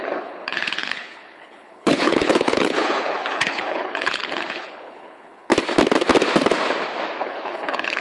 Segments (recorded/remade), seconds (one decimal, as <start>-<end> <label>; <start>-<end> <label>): 0.0-5.5 remade; 5.5-7.2 recorded; 7.2-8.0 remade